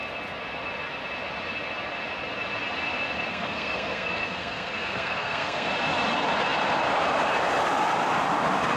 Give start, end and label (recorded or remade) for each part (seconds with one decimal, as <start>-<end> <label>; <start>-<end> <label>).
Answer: 0.0-3.3 recorded; 3.3-5.7 remade; 5.7-8.8 recorded